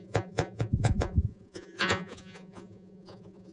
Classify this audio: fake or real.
fake